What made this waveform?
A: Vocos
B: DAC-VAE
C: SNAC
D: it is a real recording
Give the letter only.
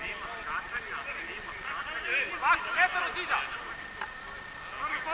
D